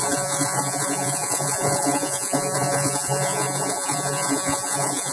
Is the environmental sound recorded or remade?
remade